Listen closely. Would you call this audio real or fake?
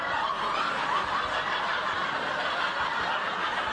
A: real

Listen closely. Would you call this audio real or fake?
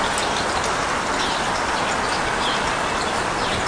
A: real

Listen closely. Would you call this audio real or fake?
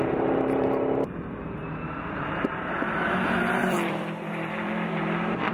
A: fake